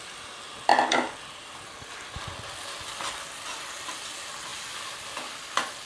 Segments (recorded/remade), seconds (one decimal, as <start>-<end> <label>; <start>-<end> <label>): 0.0-5.8 recorded